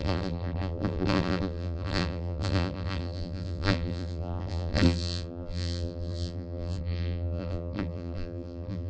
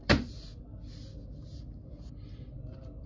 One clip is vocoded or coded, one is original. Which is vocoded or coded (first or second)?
first